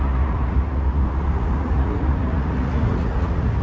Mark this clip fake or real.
fake